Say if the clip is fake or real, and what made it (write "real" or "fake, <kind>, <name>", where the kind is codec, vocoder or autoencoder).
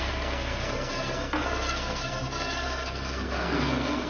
fake, codec, SNAC